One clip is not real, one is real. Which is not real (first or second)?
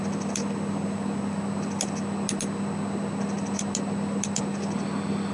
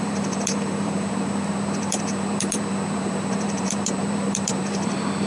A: second